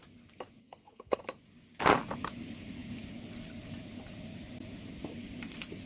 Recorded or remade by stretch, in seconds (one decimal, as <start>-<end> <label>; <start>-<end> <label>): 0.0-0.6 recorded; 0.6-1.2 remade; 1.2-5.9 recorded